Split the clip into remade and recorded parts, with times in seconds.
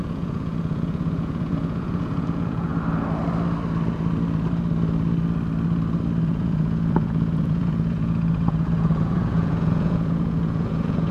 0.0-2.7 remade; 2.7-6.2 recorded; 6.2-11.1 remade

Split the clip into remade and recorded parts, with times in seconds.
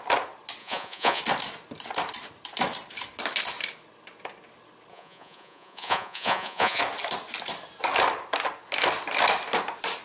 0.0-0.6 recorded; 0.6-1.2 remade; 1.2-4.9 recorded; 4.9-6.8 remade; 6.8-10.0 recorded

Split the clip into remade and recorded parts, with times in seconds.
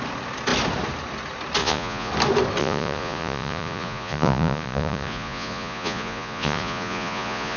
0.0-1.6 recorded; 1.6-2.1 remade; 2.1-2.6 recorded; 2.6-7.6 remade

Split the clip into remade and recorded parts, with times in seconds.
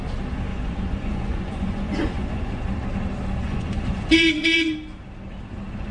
0.0-0.5 recorded; 0.5-2.6 remade; 2.6-3.4 recorded; 3.4-4.7 remade; 4.7-5.9 recorded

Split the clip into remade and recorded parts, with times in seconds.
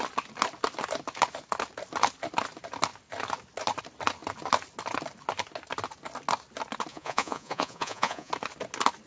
0.0-6.9 recorded; 6.9-8.3 remade; 8.3-9.1 recorded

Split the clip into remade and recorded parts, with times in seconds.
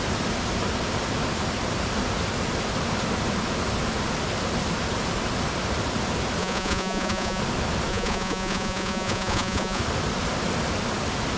0.0-6.4 recorded; 6.4-7.4 remade; 7.4-7.9 recorded; 7.9-9.8 remade; 9.8-11.4 recorded